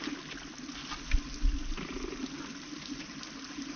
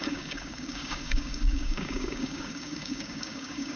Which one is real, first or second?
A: first